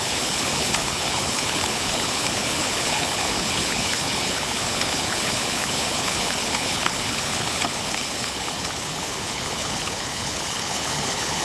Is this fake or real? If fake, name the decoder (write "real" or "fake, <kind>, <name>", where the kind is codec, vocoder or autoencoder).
fake, codec, HILCodec